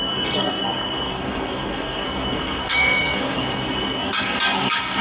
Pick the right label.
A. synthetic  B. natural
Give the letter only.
A